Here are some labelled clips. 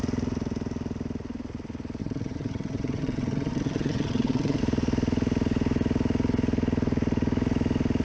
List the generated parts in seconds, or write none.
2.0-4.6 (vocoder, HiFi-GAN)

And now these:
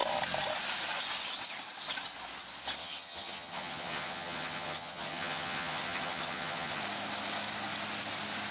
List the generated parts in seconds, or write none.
2.8-6.8 (vocoder, HiFi-GAN)

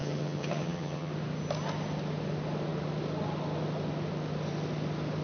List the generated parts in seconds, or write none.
0.0-1.1 (vocoder, HiFi-GAN)

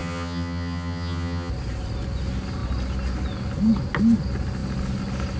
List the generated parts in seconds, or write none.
0.0-1.5 (vocoder, HiFi-GAN)